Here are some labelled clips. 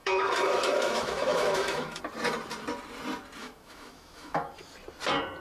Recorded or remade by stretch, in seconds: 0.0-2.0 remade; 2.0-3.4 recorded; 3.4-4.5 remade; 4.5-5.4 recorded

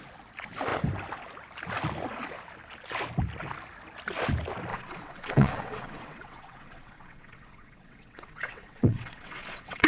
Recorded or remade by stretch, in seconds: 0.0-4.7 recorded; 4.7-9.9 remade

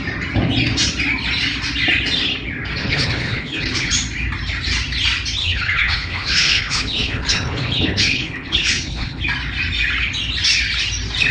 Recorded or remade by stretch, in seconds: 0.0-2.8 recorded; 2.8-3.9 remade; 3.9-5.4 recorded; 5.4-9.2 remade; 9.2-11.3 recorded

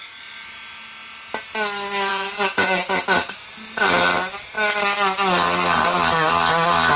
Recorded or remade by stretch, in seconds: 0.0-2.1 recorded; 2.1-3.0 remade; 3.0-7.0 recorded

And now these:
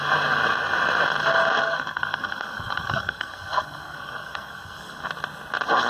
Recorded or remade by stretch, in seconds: 0.0-1.6 recorded; 1.6-5.1 remade; 5.1-5.9 recorded

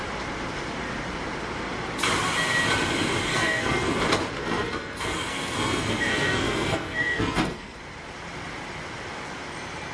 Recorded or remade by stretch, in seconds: 0.0-3.3 recorded; 3.3-4.0 remade; 4.0-4.4 recorded; 4.4-7.8 remade; 7.8-9.9 recorded

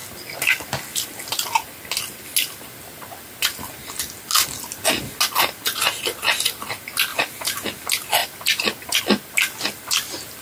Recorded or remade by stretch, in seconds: 0.0-7.1 recorded; 7.1-7.8 remade; 7.8-8.2 recorded; 8.2-9.0 remade; 9.0-10.4 recorded

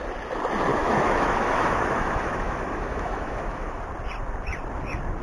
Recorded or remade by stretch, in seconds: 0.0-0.7 recorded; 0.7-3.8 remade; 3.8-5.2 recorded